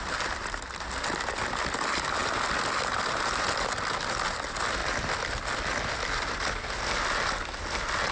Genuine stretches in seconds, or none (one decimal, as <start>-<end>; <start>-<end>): 0.0-8.1